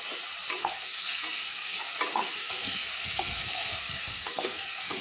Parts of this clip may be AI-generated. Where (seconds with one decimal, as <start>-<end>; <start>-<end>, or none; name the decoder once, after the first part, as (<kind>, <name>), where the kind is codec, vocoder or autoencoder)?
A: 0.6-1.8 (codec, SNAC); 2.2-5.0